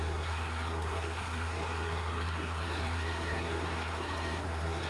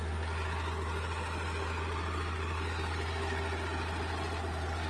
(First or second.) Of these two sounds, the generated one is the first